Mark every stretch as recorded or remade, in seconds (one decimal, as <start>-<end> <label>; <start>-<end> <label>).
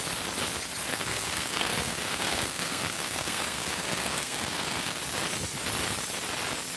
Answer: 0.0-0.9 recorded; 0.9-5.0 remade; 5.0-6.8 recorded